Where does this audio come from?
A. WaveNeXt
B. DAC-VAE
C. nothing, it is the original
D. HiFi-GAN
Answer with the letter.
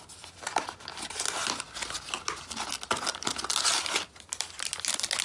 C